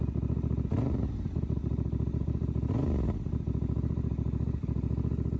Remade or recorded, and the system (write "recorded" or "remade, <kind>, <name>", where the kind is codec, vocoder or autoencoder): recorded